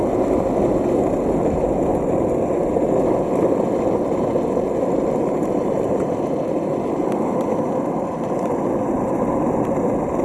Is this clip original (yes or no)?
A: yes